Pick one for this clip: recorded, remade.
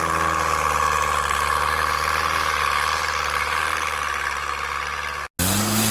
recorded